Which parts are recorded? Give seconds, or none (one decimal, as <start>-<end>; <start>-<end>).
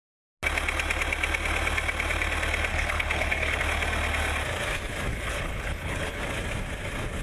0.0-2.7; 3.6-5.1; 6.2-7.2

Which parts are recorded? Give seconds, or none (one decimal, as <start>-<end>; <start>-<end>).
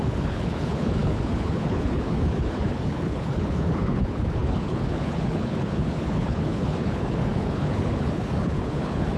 none